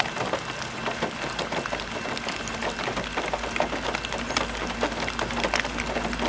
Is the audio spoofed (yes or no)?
no